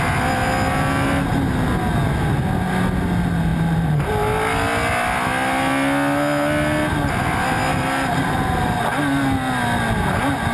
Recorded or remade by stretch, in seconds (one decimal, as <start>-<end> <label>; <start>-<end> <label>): 0.0-3.5 recorded; 3.5-4.1 remade; 4.1-7.7 recorded; 7.7-8.8 remade; 8.8-10.5 recorded